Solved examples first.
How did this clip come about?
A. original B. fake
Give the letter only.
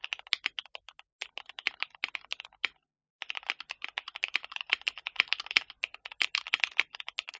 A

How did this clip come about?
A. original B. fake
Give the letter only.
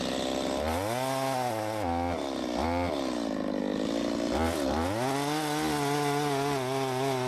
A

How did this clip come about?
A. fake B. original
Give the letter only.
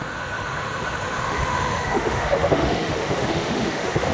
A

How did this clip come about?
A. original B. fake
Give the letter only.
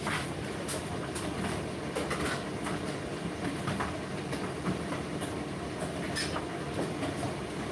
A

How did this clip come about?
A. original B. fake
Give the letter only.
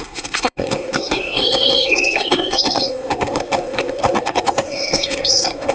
B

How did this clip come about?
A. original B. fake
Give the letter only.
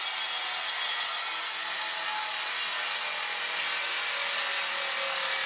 A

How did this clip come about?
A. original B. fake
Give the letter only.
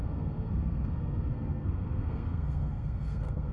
B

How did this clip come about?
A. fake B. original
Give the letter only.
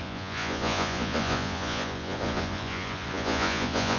A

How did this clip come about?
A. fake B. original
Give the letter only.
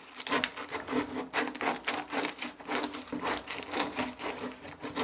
B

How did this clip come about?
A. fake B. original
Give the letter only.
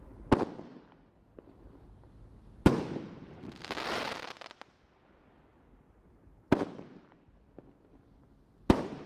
B